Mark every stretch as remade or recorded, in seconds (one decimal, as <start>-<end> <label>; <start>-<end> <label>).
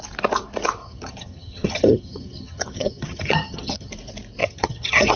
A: 0.0-0.8 recorded; 0.8-3.9 remade; 3.9-4.4 recorded; 4.4-5.2 remade